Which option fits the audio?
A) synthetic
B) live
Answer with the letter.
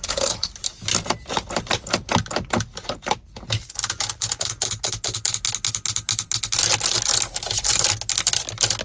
B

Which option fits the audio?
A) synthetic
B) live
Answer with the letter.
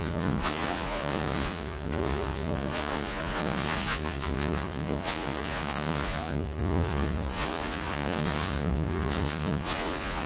A